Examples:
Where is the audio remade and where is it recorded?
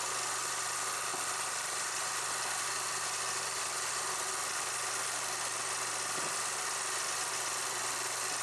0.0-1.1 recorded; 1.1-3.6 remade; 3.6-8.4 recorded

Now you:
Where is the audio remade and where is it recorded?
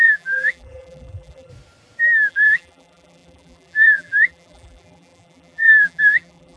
0.0-1.5 remade; 1.5-2.3 recorded; 2.3-6.6 remade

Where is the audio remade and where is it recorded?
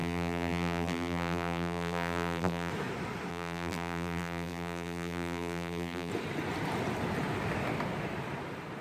0.0-2.7 remade; 2.7-3.3 recorded; 3.3-6.1 remade; 6.1-8.8 recorded